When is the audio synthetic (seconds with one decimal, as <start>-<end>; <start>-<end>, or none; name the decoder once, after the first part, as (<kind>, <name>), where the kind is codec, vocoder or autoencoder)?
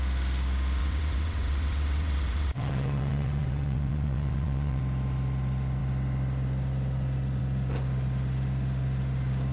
0.8-4.8 (vocoder, WaveNeXt)